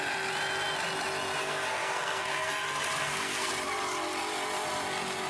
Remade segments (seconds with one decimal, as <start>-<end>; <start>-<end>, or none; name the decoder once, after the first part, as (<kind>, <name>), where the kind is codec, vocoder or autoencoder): 1.4-2.5 (codec, SNAC); 3.0-3.5